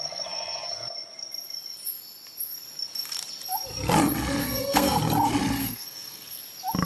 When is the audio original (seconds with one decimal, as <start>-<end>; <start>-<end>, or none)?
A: 0.0-4.4; 5.0-5.6; 6.4-6.9